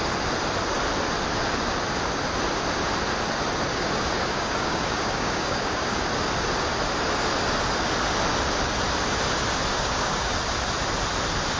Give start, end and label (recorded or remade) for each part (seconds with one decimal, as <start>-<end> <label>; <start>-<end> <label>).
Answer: 0.0-3.7 recorded; 3.7-6.0 remade; 6.0-9.7 recorded; 9.7-10.3 remade; 10.3-11.6 recorded